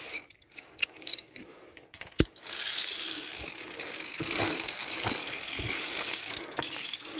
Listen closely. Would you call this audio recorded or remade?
remade